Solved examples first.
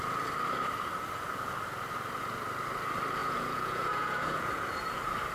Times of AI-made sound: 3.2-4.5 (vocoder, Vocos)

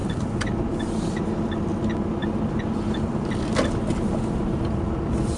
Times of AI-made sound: 0.0-0.8 (vocoder, BigVGAN v2); 1.7-4.9

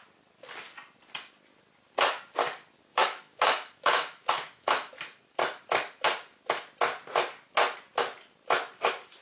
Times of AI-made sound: 2.9-4.9 (autoencoder, DAC-VAE)

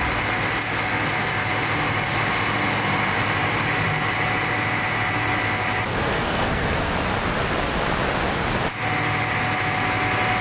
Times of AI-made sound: 5.9-6.9 (codec, SNAC)

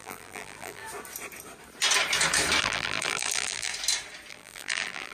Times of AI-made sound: 0.0-0.8 (vocoder, BigVGAN v2); 2.6-3.7; 4.3-5.1

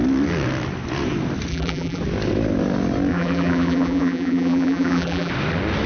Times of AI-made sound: 1.5-2.0 (vocoder, BigVGAN v2); 3.1-5.3

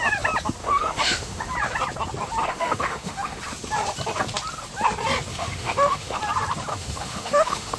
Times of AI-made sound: 0.6-1.5 (autoencoder, DAC-VAE); 2.4-3.4; 5.3-6.2; 6.7-7.8